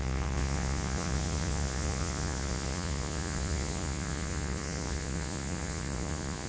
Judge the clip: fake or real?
fake